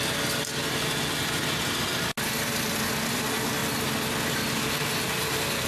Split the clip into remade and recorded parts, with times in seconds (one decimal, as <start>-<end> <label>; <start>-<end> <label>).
0.0-5.7 recorded